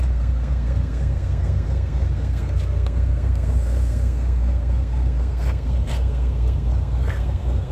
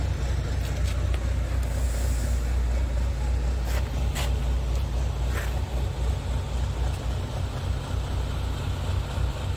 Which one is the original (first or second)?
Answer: second